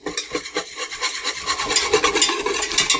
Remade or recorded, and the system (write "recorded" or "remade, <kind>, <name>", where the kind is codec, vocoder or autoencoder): recorded